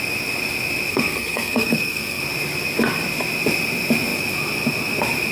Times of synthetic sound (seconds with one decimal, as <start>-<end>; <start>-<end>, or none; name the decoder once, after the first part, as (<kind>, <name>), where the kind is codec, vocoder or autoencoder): 0.9-2.2 (codec, SNAC)